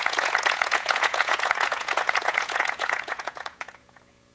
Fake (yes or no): yes